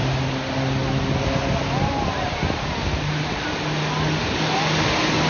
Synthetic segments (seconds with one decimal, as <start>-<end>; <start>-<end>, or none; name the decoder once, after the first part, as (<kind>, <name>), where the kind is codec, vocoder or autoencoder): none